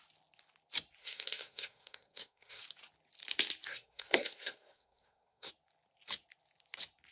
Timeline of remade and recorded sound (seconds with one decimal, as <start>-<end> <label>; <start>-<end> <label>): 0.0-1.0 recorded; 1.0-2.6 remade; 2.6-3.7 recorded; 3.7-5.5 remade; 5.5-7.1 recorded

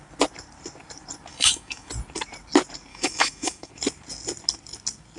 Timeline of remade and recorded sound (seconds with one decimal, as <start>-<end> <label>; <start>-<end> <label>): 0.0-1.3 recorded; 1.3-1.9 remade; 1.9-2.9 recorded; 2.9-3.7 remade; 3.7-5.2 recorded

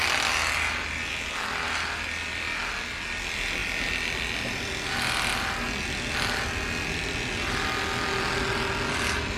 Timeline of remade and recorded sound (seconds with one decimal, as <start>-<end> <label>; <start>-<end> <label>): 0.0-9.4 recorded

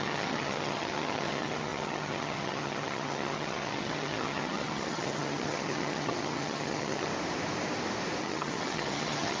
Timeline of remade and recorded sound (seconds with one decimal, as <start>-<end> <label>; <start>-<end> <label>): 0.0-7.1 remade; 7.1-8.2 recorded; 8.2-9.4 remade

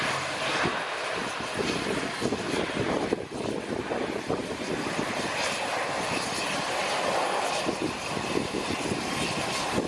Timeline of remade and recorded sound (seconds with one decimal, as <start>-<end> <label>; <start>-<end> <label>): 0.0-1.2 remade; 1.2-2.3 recorded; 2.3-9.9 remade

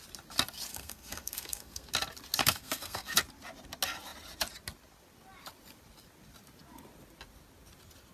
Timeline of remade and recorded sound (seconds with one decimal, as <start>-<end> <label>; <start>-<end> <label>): 0.0-0.7 recorded; 0.7-1.9 remade; 1.9-2.4 recorded; 2.4-3.2 remade; 3.2-8.1 recorded

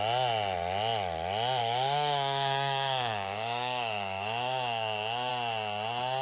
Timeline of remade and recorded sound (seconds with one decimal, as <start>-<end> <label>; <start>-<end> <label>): 0.0-1.6 recorded; 1.6-5.3 remade; 5.3-6.2 recorded